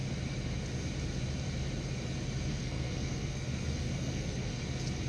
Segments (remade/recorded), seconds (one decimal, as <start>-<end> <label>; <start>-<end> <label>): 0.0-2.5 recorded; 2.5-4.6 remade; 4.6-5.1 recorded